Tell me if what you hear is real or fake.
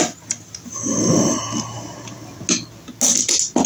real